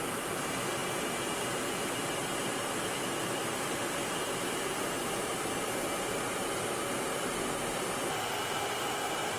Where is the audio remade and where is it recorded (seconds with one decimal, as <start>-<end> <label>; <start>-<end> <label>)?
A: 0.0-3.4 recorded; 3.4-7.3 remade; 7.3-9.4 recorded